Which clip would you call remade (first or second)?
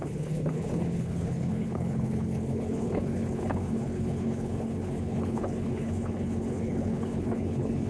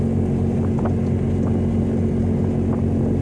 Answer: first